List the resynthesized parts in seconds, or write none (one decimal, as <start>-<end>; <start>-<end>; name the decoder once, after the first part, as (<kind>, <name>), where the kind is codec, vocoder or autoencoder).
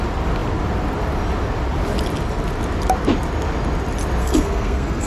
4.2-5.1 (codec, SNAC)